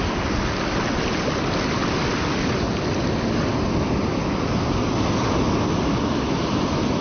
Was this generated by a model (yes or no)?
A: no